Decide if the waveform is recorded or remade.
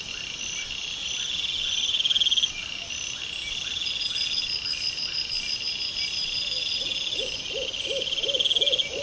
recorded